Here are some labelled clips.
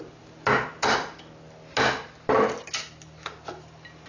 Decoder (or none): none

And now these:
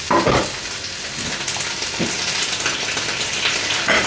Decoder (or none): none